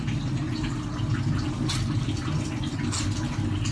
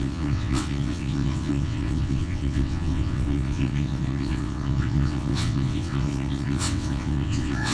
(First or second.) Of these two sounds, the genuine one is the first